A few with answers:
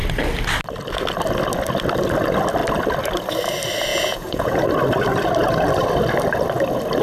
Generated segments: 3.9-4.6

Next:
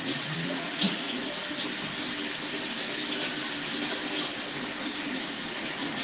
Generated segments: 0.0-1.2; 4.8-6.0

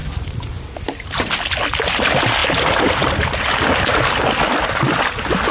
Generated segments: none

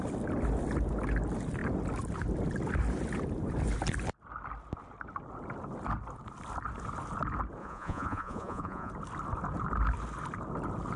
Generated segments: 7.6-8.9